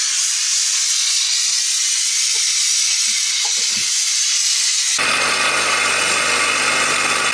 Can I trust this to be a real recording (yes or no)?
yes